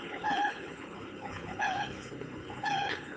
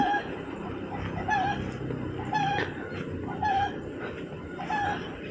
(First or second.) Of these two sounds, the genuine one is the second